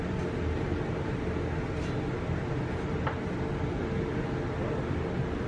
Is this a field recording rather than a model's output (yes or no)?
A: yes